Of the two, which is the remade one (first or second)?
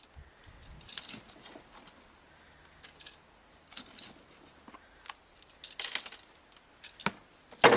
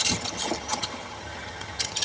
second